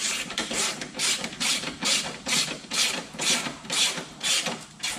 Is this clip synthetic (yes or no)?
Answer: yes